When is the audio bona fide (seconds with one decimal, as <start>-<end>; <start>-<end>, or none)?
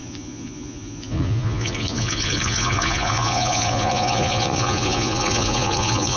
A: none